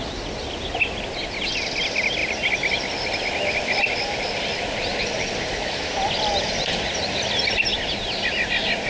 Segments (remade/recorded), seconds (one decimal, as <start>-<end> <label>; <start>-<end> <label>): 0.0-2.2 recorded; 2.2-6.1 remade; 6.1-7.7 recorded; 7.7-8.5 remade; 8.5-8.9 recorded